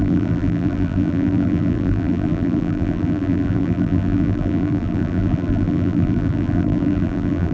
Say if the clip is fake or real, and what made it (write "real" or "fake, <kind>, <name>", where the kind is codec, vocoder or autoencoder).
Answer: fake, vocoder, BigVGAN v2